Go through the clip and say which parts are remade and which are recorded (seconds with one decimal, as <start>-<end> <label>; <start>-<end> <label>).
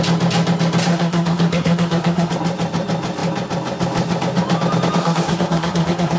0.0-0.9 recorded; 0.9-2.3 remade; 2.3-5.0 recorded; 5.0-6.2 remade